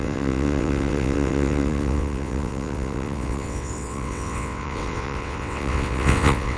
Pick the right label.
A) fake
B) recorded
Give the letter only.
A